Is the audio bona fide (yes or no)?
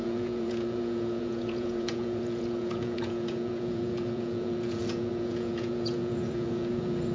no